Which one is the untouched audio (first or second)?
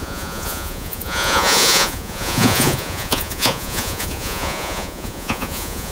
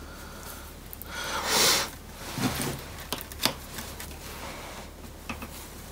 second